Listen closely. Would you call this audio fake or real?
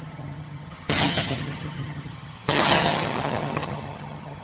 fake